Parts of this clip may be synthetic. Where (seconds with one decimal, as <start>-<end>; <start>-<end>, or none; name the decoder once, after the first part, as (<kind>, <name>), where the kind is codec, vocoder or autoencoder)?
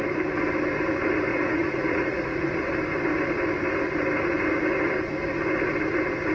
1.3-2.7 (vocoder, Vocos)